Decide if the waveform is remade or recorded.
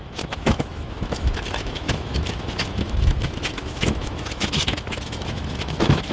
remade